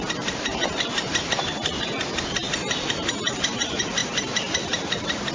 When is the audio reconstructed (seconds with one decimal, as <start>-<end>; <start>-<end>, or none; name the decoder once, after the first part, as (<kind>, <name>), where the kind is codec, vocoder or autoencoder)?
4.0-5.3 (vocoder, BigVGAN v2)